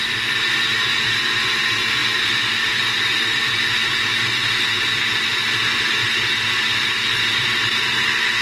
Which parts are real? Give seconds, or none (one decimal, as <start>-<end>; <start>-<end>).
0.0-8.4